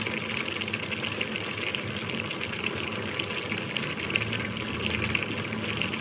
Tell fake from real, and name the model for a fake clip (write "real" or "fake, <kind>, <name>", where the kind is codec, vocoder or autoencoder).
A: real